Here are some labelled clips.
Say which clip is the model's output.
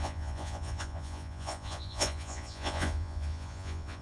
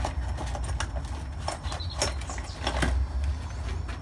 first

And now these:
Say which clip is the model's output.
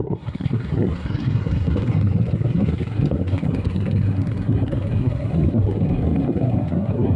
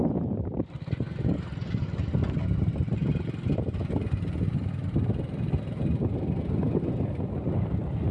first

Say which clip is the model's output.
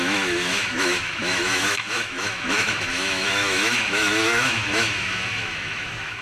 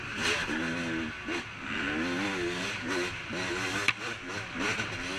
first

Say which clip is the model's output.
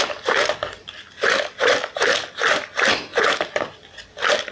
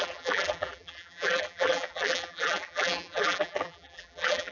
second